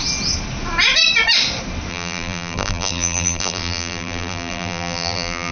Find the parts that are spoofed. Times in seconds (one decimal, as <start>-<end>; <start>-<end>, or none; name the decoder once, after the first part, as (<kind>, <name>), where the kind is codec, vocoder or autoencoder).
1.9-5.5 (vocoder, BigVGAN v2)